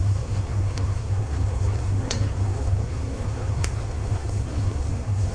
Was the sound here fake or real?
fake